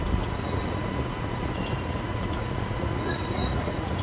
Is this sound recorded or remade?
remade